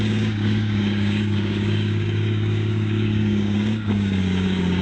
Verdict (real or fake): fake